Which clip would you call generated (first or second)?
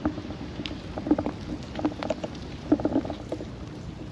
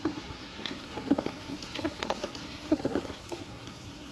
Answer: second